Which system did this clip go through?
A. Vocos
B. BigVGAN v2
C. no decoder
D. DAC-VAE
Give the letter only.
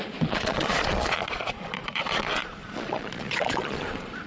A